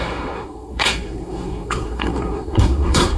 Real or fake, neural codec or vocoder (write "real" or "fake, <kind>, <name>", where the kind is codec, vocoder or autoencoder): fake, codec, SNAC